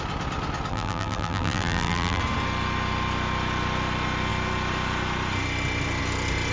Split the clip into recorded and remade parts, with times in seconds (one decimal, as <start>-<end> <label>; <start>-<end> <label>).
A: 0.0-0.7 recorded; 0.7-2.2 remade; 2.2-6.5 recorded

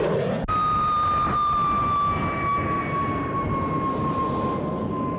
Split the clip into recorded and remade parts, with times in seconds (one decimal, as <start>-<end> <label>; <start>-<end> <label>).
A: 0.0-5.2 recorded

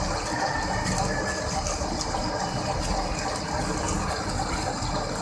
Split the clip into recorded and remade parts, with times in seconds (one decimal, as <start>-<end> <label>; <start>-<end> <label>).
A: 0.0-5.2 recorded